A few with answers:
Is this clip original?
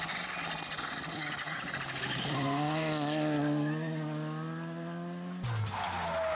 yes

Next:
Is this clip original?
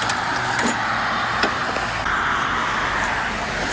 no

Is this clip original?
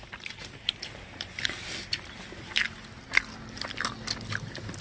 yes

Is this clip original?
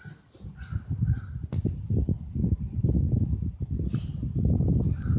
yes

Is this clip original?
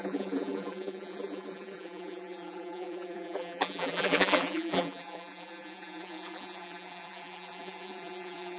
no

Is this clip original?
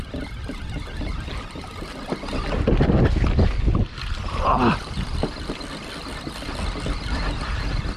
yes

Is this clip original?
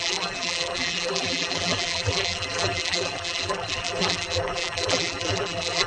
no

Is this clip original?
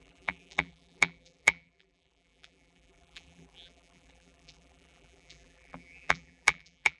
no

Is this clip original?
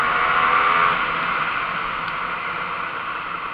yes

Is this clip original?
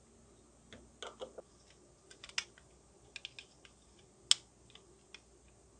yes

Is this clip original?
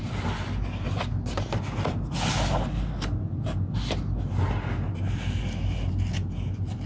yes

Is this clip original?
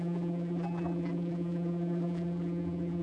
no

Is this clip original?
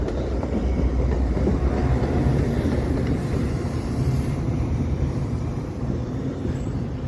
no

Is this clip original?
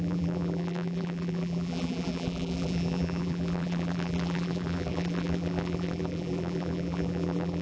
no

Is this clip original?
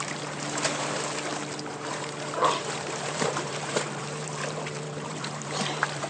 no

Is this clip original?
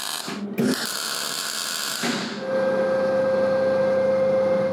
yes